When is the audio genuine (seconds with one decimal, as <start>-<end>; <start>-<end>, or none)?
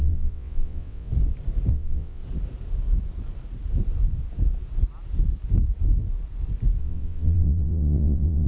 1.1-1.7; 2.2-6.8